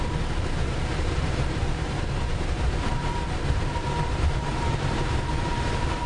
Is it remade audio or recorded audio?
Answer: remade